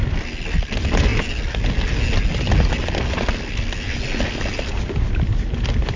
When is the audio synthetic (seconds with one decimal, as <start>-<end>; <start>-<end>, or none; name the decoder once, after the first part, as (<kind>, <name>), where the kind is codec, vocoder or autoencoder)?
none